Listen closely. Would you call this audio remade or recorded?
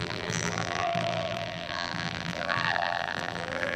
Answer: remade